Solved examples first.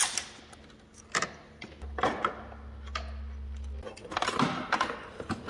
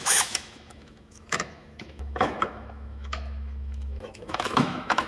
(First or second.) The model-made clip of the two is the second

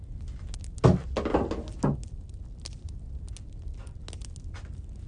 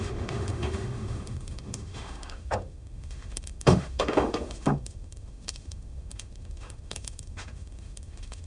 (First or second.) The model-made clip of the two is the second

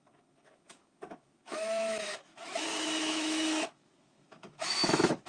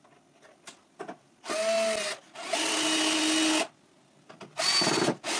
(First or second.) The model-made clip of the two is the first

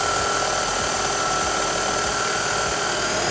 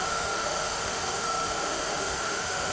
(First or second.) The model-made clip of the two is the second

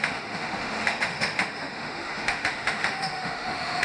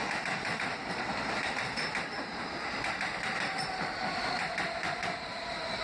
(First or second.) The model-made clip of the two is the first